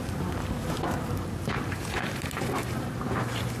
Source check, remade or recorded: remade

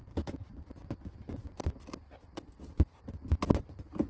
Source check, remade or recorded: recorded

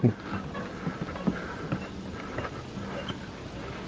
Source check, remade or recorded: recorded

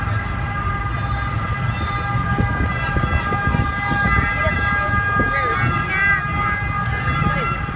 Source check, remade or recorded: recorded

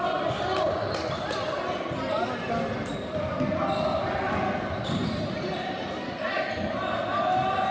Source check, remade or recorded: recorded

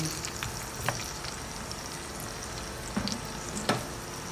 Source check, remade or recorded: recorded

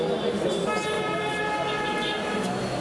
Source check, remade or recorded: recorded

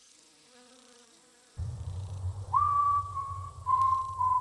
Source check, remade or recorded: remade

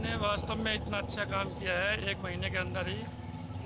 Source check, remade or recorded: remade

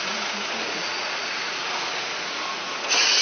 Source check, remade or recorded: remade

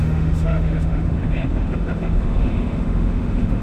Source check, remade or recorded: remade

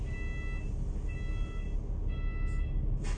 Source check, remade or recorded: recorded